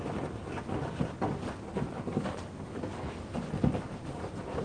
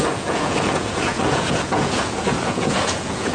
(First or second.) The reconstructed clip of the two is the second